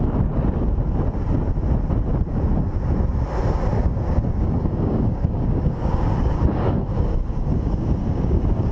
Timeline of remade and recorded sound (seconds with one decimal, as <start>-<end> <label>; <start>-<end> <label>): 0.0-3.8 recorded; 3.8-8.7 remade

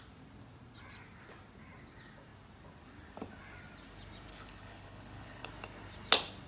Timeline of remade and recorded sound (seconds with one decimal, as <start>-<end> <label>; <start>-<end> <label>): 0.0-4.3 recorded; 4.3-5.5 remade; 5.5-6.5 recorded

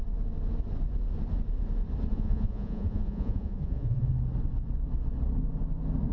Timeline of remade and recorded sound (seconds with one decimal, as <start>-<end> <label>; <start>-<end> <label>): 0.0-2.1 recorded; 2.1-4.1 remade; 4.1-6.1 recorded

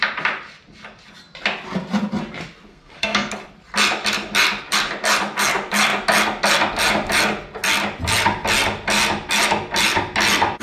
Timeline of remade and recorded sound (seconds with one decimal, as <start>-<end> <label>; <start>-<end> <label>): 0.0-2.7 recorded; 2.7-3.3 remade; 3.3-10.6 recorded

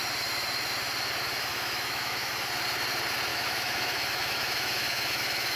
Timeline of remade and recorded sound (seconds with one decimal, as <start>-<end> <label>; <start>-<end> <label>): 0.0-1.5 recorded; 1.5-2.3 remade; 2.3-3.3 recorded; 3.3-5.6 remade

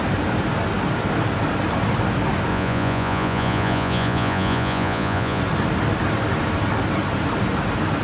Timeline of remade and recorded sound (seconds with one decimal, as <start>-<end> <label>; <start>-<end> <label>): 0.0-2.5 recorded; 2.5-5.4 remade; 5.4-8.0 recorded

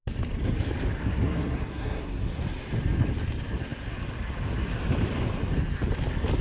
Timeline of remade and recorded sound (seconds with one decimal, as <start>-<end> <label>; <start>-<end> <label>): 0.0-1.0 recorded; 1.0-2.4 remade; 2.4-6.4 recorded